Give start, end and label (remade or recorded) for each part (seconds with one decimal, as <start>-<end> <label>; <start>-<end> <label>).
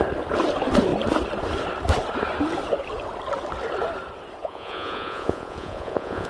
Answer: 0.0-4.4 recorded; 4.4-6.3 remade